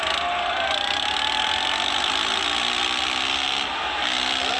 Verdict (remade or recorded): recorded